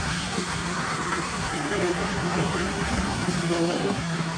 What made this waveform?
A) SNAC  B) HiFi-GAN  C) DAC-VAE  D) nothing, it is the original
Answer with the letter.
A